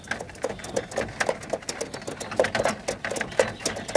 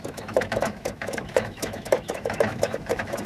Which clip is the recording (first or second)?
first